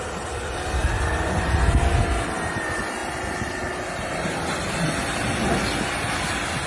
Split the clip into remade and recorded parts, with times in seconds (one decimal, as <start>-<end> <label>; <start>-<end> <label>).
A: 0.0-6.7 recorded